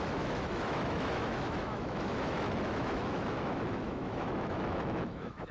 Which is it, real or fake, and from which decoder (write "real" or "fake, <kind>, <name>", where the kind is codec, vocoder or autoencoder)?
fake, autoencoder, DAC-VAE